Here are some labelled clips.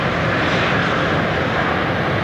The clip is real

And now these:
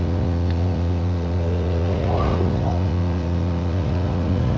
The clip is fake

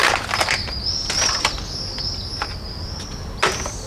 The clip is real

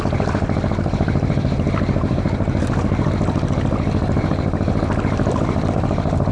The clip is real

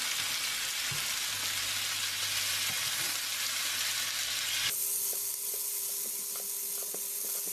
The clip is real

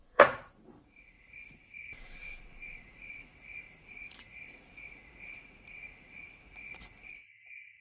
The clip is fake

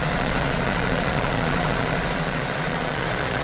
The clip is fake